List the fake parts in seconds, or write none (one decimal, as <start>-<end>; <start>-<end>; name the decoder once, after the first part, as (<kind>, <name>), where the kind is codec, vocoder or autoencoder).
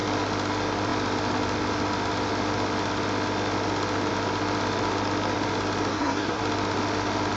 5.9-6.4 (codec, SNAC)